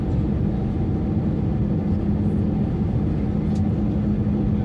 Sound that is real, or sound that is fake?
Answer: real